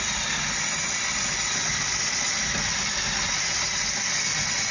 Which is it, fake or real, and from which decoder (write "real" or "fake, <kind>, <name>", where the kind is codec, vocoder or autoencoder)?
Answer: real